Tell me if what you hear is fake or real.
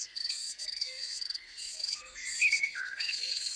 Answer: fake